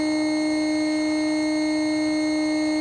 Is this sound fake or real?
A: real